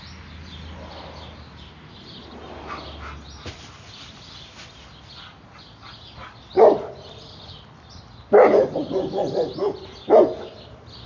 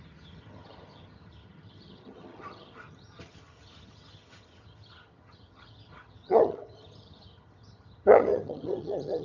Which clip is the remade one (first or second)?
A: second